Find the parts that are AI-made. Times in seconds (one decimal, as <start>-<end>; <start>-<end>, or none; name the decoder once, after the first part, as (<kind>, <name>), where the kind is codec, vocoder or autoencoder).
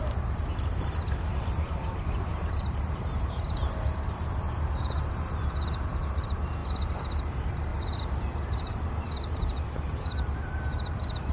0.0-6.6 (vocoder, BigVGAN v2); 7.2-7.7; 8.5-11.3